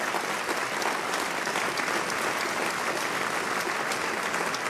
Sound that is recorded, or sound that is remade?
recorded